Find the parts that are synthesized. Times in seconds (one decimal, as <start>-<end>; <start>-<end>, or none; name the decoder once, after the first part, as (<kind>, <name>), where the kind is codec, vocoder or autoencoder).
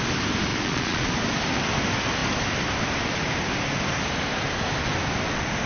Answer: 0.5-1.1 (vocoder, Vocos)